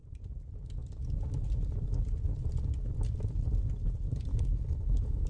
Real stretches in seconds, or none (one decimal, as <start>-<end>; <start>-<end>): 0.0-4.3